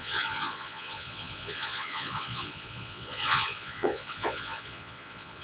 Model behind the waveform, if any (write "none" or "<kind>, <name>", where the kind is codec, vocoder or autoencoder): vocoder, Vocos